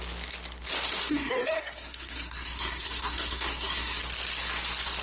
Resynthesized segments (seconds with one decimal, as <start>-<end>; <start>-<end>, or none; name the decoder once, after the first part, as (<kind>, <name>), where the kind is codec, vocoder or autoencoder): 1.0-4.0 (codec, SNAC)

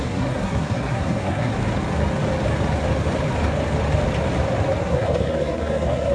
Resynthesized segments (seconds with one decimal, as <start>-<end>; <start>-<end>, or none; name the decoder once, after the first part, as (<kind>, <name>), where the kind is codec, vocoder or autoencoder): 0.0-1.5 (codec, SNAC); 4.8-6.1

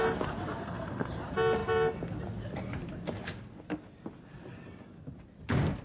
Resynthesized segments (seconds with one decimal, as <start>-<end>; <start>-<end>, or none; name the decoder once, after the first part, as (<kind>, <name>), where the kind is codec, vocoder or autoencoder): 0.6-1.2 (codec, SNAC)

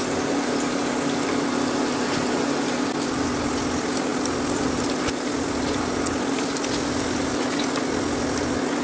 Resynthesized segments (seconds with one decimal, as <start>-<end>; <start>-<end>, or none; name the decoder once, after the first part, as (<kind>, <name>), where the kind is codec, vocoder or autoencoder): none

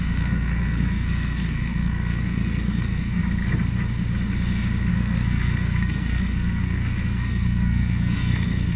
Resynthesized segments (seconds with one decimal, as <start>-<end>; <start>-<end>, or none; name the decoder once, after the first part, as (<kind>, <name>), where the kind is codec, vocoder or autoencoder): 0.0-3.2 (codec, SNAC); 4.9-8.8